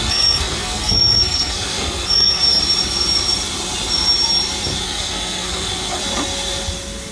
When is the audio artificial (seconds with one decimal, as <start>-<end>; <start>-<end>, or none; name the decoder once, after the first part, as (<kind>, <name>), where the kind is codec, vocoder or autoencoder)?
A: 0.0-2.4 (codec, SNAC); 4.8-6.0